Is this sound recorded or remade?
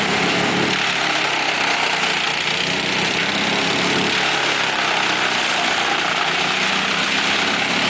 recorded